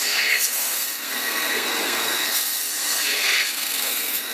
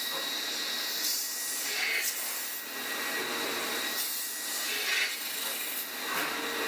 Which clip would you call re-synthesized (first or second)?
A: first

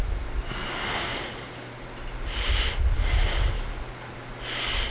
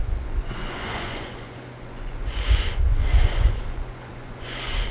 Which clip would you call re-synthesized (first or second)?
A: second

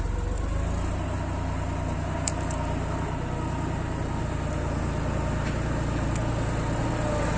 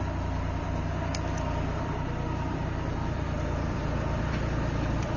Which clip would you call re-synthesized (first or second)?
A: second